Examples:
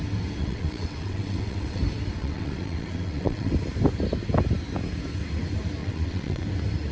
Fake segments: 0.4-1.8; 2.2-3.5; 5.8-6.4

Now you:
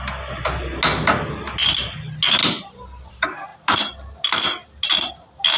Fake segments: none

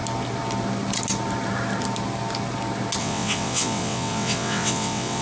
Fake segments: 3.0-5.2

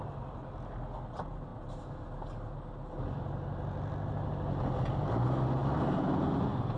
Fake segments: none

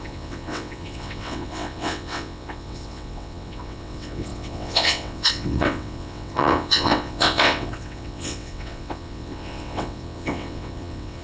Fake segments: 0.0-11.2

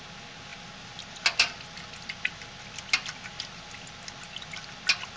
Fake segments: none